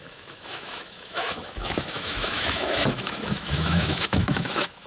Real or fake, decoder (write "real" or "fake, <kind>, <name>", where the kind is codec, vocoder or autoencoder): fake, autoencoder, DAC-VAE